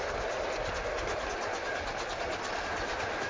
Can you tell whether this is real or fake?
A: real